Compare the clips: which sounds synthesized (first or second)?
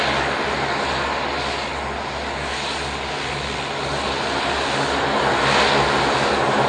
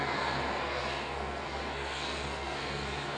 second